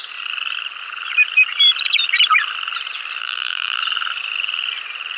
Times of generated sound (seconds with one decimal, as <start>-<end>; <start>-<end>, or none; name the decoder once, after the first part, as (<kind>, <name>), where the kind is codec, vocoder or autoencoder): 3.2-3.8 (vocoder, BigVGAN v2)